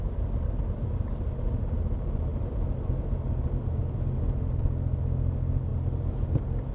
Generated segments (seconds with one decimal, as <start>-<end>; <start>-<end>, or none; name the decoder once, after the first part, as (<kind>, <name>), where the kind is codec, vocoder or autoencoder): none